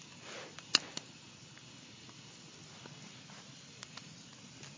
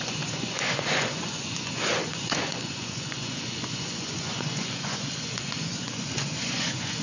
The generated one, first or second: second